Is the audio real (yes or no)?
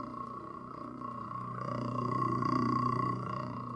no